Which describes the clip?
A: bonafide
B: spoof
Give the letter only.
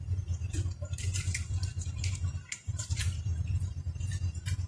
A